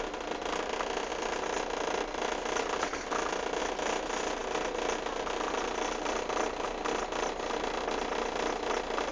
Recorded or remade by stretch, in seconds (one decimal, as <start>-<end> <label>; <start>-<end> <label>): 0.0-9.1 recorded